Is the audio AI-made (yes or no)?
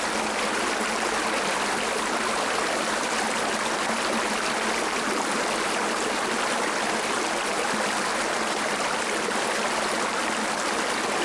no